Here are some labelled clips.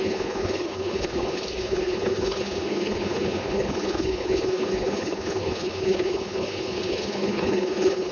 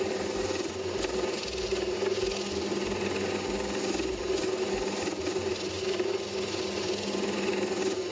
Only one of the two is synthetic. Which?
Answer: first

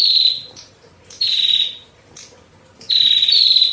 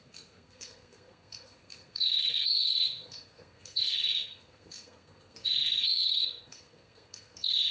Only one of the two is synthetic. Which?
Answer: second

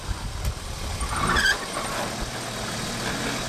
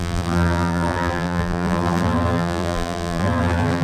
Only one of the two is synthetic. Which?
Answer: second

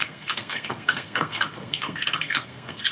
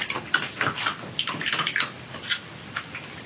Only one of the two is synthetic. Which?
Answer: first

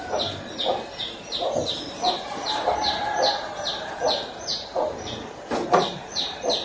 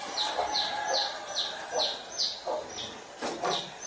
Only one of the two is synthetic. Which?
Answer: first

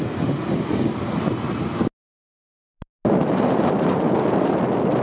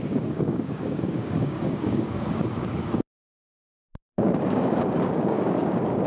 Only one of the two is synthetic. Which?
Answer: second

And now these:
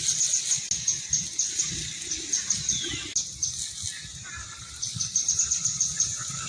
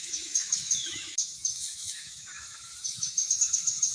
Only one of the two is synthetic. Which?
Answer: second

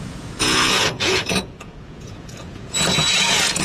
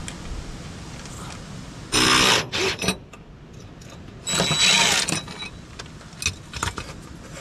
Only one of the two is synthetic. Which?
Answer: first